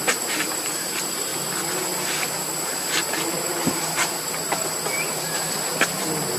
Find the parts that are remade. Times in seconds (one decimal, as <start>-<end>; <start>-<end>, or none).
0.0-1.3; 3.0-5.7